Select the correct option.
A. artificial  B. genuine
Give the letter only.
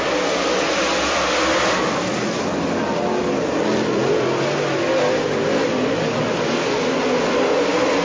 B